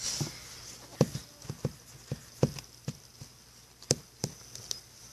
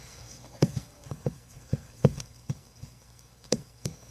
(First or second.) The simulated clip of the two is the second